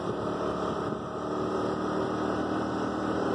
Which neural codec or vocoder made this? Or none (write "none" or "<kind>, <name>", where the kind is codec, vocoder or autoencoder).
none